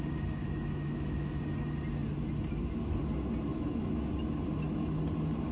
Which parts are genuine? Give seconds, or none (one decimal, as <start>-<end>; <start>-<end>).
0.0-0.4; 1.4-3.5; 4.1-5.5